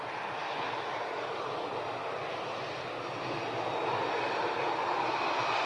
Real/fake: real